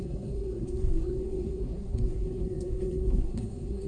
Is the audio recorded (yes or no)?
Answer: no